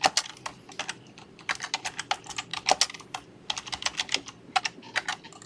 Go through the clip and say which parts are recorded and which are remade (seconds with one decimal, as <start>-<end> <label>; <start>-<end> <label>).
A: 0.0-5.5 recorded